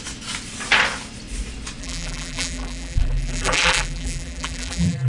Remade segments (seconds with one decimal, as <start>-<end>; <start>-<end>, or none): 1.8-5.1